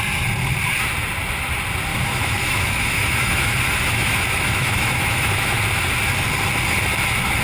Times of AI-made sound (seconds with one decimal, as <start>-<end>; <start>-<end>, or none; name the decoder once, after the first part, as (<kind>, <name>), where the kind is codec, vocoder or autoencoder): 1.9-5.6 (autoencoder, DAC-VAE)